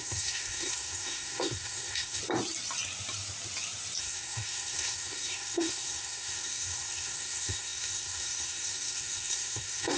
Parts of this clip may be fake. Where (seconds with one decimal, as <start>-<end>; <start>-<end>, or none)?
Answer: 0.0-2.2; 4.0-10.0